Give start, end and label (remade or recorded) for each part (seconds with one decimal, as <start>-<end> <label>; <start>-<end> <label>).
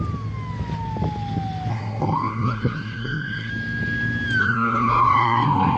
0.0-1.7 recorded; 1.7-3.5 remade; 3.5-4.4 recorded; 4.4-5.8 remade